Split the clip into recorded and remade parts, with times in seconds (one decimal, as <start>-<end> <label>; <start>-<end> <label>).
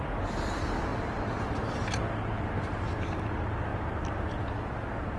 0.0-5.2 recorded